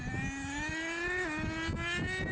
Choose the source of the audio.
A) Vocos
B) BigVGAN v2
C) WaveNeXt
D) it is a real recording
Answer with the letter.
D